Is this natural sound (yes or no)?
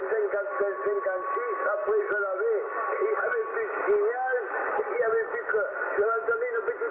yes